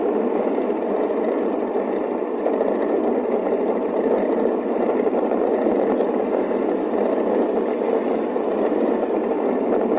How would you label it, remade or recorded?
recorded